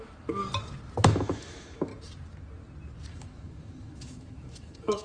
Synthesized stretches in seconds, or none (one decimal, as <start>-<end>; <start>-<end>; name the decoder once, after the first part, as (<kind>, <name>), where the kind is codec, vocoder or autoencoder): 0.0-0.4 (autoencoder, DAC-VAE); 1.0-1.9; 3.1-5.0